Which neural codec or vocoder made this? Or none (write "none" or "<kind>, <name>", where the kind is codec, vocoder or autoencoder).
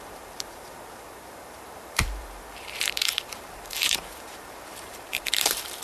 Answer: vocoder, BigVGAN v2